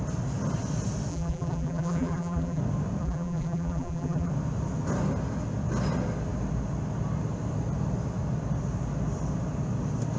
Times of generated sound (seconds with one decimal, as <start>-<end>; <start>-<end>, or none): 1.1-2.6; 3.0-4.3